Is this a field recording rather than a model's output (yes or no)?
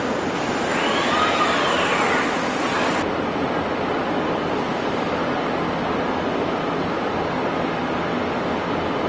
yes